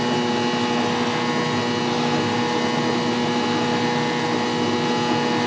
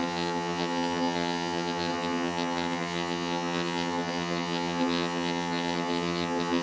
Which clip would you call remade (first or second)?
second